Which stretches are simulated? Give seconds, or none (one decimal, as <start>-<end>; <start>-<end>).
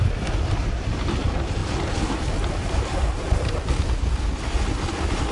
none